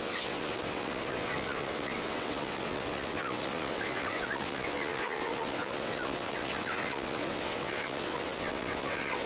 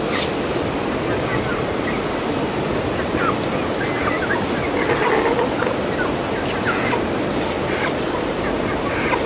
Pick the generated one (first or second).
first